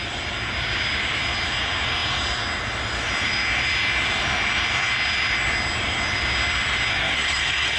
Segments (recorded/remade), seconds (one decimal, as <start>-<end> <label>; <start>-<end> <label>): 0.0-6.9 recorded; 6.9-7.8 remade